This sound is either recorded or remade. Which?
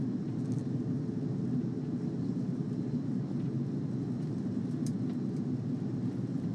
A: recorded